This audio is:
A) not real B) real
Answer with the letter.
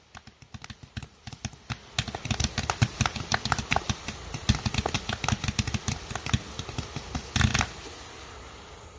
B